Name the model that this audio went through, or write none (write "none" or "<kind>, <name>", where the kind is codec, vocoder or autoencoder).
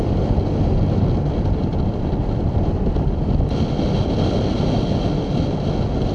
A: none